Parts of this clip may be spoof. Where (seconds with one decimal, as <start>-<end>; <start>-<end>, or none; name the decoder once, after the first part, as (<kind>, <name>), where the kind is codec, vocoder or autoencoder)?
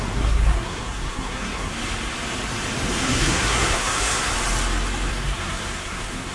0.0-1.7 (codec, SNAC); 2.9-4.3; 5.1-6.3